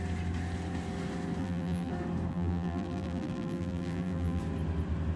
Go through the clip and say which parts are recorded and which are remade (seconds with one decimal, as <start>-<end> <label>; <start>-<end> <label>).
0.0-1.4 recorded; 1.4-1.9 remade; 1.9-2.3 recorded; 2.3-4.4 remade; 4.4-5.2 recorded

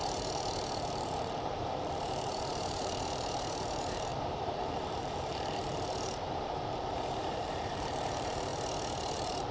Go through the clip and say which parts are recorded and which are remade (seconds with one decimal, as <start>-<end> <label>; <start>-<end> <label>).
0.0-8.5 remade; 8.5-9.0 recorded; 9.0-9.5 remade

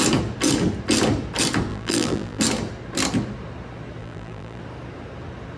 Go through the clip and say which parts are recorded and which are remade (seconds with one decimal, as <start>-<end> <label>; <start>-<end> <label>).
0.0-1.7 recorded; 1.7-2.4 remade; 2.4-4.0 recorded; 4.0-4.6 remade; 4.6-5.6 recorded

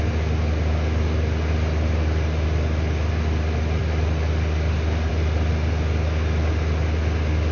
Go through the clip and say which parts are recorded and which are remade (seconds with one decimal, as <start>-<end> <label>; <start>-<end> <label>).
0.0-7.5 recorded

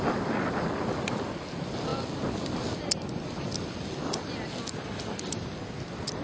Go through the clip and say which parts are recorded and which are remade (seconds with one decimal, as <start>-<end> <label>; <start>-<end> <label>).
0.0-6.2 recorded

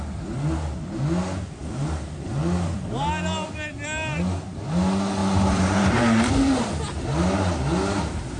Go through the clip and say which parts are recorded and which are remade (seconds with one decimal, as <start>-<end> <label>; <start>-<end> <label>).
0.0-5.2 recorded; 5.2-6.0 remade; 6.0-8.4 recorded

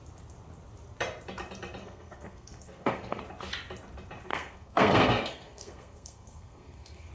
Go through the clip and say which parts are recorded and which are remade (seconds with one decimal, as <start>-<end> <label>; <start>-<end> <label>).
0.0-1.8 recorded; 1.8-3.2 remade; 3.2-4.3 recorded; 4.3-7.1 remade

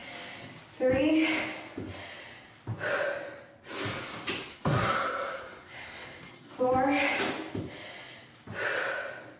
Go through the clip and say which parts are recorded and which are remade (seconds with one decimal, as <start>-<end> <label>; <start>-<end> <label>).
0.0-4.5 recorded; 4.5-6.5 remade; 6.5-9.4 recorded